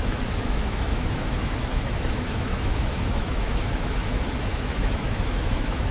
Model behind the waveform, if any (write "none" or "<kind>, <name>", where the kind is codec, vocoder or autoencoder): autoencoder, DAC-VAE